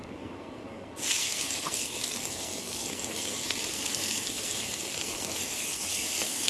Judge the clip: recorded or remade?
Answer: remade